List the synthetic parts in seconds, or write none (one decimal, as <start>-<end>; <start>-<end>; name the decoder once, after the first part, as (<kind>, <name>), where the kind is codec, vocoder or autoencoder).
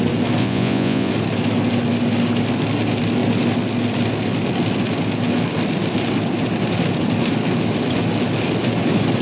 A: 0.4-1.1 (vocoder, Vocos)